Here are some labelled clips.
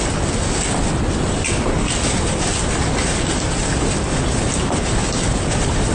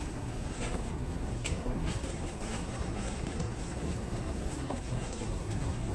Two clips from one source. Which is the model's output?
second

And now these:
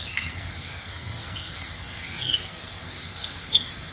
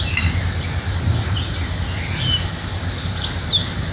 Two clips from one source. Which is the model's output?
first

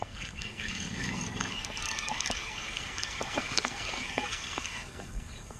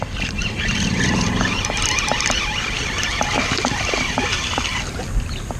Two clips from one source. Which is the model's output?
first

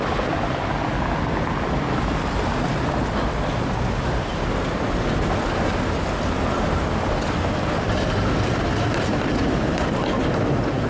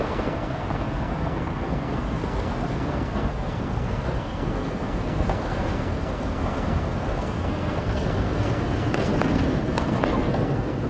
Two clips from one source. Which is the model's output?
second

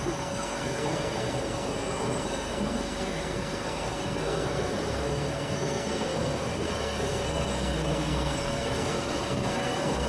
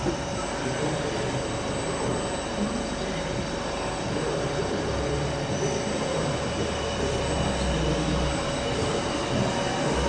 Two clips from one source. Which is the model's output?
first